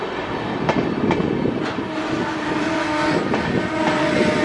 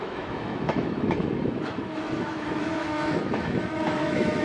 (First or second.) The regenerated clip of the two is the second